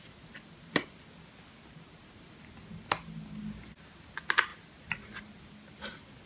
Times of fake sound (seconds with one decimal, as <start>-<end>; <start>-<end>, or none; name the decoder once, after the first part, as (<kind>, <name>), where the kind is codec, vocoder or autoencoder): none